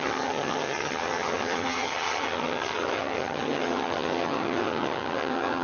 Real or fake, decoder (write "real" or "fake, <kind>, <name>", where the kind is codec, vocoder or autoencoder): fake, vocoder, HiFi-GAN